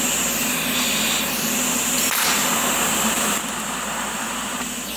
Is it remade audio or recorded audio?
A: recorded